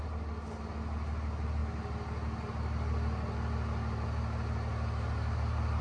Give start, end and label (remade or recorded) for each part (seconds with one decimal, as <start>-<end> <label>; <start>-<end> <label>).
0.0-5.8 recorded